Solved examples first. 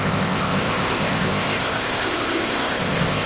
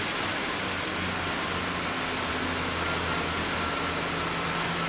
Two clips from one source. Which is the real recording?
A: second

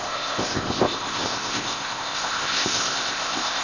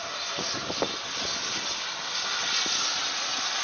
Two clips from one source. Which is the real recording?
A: second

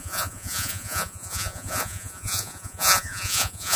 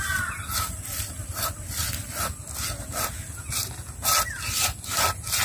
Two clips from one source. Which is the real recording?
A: second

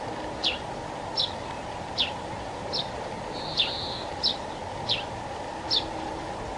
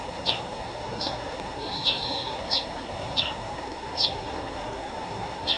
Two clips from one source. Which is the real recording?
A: first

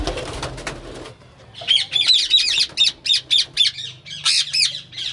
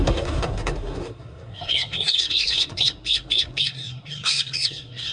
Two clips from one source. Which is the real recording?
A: first